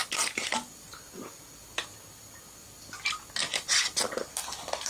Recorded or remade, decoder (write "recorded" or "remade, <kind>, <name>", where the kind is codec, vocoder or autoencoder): recorded